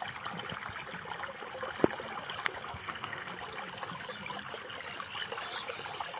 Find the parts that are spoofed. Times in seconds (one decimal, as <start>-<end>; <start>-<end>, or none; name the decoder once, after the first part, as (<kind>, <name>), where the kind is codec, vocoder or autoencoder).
2.7-3.3 (codec, SNAC)